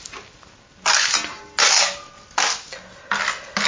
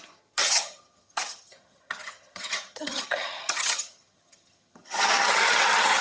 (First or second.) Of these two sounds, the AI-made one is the second